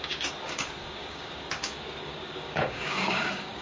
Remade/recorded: remade